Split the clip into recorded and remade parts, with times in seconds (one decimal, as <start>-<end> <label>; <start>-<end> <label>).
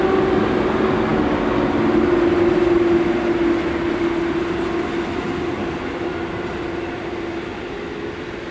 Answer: 0.0-8.5 recorded